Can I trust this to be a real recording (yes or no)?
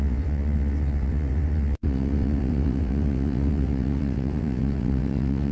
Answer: no